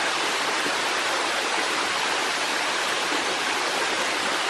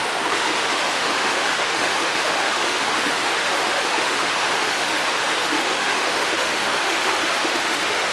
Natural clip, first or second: first